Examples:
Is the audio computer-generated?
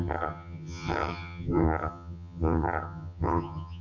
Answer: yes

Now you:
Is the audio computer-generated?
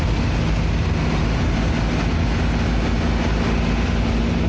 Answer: no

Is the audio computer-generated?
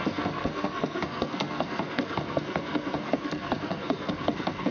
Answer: yes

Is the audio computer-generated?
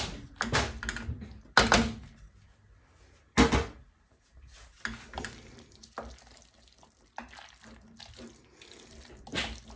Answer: no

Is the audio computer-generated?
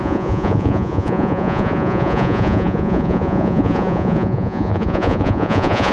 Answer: yes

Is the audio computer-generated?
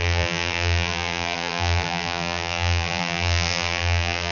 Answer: yes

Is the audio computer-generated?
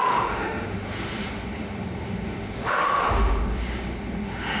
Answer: yes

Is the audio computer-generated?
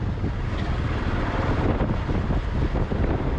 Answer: no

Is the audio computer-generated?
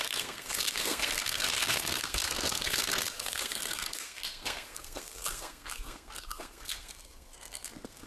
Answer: yes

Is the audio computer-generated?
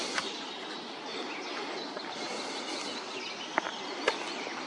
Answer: no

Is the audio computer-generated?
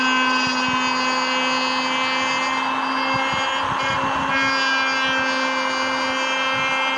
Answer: no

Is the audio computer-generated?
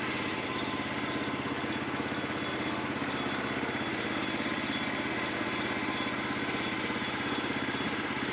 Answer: no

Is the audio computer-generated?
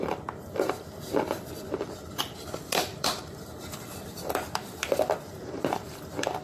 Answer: yes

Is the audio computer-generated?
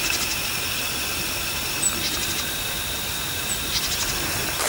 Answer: no